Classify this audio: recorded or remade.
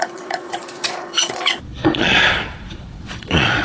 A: remade